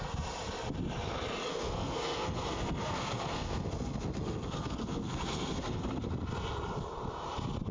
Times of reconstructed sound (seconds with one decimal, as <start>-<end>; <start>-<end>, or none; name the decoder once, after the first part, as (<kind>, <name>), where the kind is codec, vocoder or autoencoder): 1.5-6.1 (codec, SNAC)